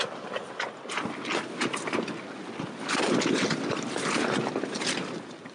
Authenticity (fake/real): real